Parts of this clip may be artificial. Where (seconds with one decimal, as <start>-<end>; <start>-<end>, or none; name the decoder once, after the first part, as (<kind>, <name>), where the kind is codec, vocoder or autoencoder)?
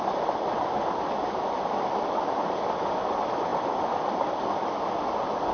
none